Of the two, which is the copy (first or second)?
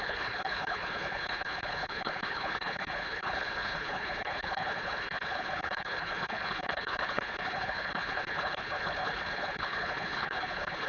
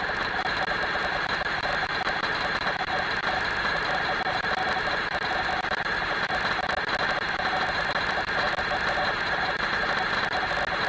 first